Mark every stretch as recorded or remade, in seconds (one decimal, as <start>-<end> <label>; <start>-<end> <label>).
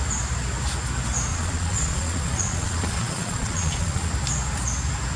0.0-1.3 recorded; 1.3-4.1 remade; 4.1-5.2 recorded